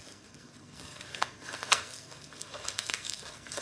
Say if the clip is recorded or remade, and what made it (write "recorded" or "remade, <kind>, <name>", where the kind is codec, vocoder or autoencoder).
remade, codec, SNAC